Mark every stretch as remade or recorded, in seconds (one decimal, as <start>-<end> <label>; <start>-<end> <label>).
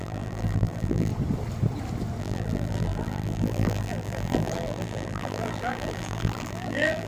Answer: 0.0-1.1 remade; 1.1-2.2 recorded; 2.2-7.1 remade